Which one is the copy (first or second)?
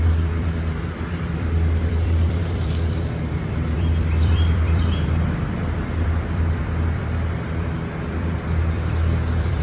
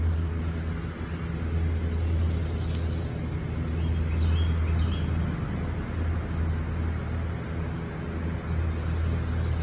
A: first